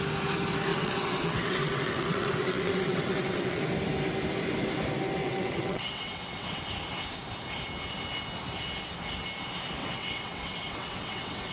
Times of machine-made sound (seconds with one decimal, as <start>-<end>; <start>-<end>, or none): 0.7-3.6; 5.2-6.6; 9.8-11.5